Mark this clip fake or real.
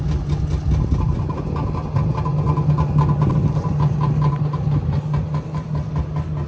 real